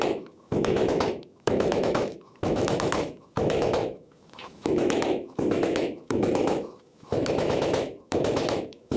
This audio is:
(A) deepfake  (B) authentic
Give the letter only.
A